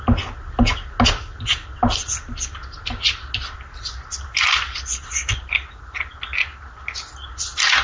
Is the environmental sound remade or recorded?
recorded